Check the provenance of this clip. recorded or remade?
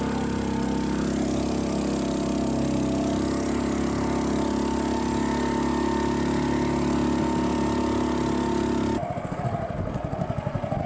recorded